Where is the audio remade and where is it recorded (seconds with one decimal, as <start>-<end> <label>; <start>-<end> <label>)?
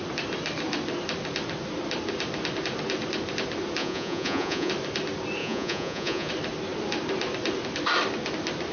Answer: 0.0-3.8 recorded; 3.8-4.7 remade; 4.7-5.4 recorded; 5.4-6.3 remade; 6.3-8.7 recorded